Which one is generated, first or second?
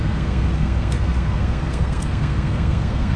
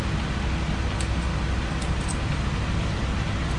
first